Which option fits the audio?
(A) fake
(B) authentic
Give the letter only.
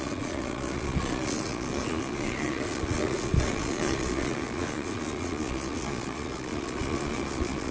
A